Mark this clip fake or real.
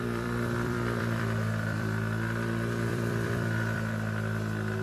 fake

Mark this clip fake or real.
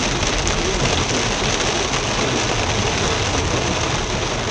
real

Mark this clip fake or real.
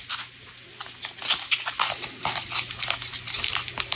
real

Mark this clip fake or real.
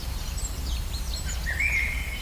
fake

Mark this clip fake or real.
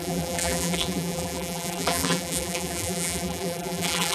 fake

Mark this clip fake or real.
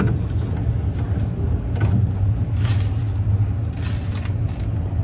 real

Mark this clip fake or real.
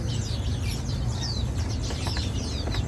fake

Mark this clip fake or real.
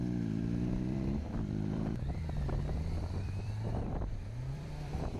fake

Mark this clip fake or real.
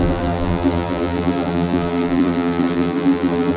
fake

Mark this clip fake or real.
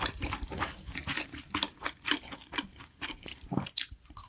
fake